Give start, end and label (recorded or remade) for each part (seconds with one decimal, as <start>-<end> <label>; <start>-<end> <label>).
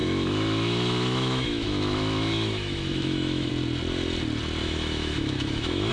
0.0-3.5 remade; 3.5-4.6 recorded; 4.6-5.9 remade